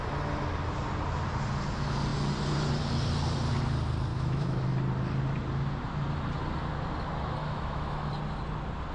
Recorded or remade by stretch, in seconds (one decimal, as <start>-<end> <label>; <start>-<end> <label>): 0.0-4.1 recorded; 4.1-4.7 remade; 4.7-7.4 recorded; 7.4-8.1 remade; 8.1-8.9 recorded